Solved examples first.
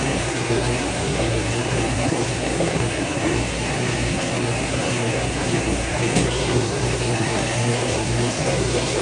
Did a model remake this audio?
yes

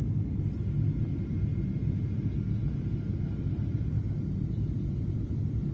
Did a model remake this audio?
no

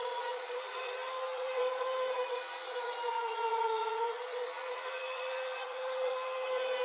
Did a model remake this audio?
yes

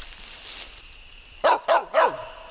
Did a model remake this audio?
no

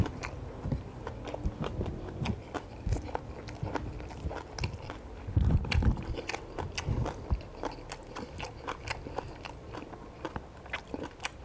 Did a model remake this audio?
no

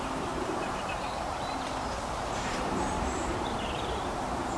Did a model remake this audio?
yes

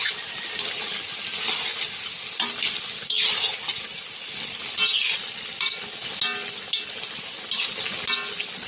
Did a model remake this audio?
no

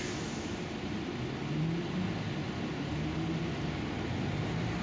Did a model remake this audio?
no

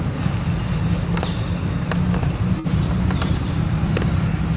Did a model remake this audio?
no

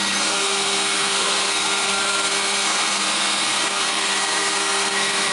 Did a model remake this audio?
yes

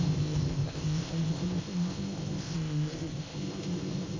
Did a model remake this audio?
yes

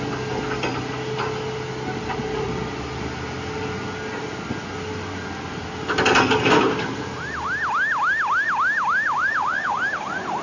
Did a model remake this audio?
no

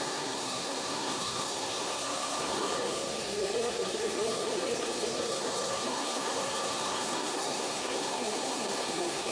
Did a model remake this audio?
yes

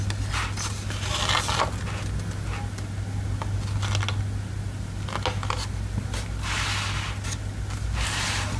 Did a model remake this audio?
no